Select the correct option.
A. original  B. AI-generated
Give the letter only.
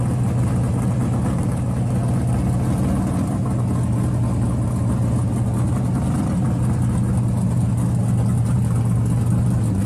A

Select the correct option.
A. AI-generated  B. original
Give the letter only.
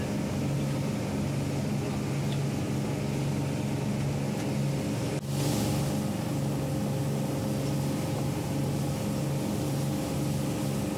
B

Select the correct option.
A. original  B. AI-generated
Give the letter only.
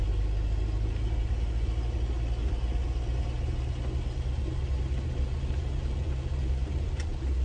A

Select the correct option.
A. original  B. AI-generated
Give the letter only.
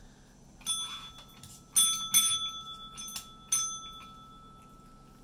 A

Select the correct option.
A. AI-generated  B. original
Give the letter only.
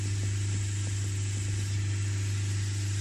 B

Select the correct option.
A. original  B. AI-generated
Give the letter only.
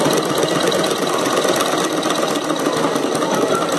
A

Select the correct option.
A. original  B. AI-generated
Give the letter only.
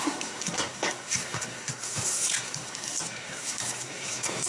B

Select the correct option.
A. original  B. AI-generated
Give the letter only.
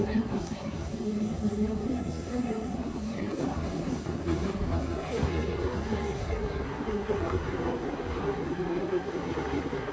B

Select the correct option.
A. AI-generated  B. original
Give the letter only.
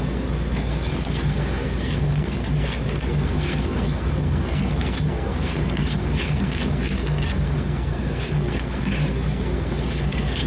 A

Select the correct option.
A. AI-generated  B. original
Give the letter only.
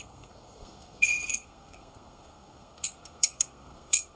A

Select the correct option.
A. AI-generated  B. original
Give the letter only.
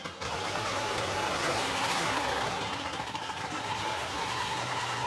A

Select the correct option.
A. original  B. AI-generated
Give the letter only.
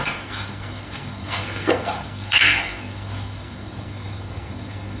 B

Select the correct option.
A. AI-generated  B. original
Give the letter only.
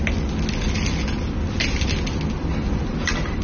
B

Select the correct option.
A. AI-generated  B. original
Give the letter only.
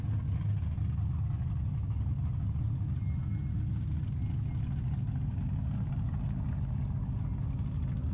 B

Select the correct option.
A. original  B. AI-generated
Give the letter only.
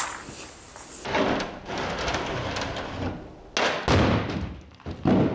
A